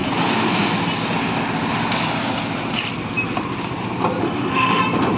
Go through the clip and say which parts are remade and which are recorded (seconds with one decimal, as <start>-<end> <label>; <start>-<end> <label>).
0.0-4.2 recorded; 4.2-4.8 remade; 4.8-5.2 recorded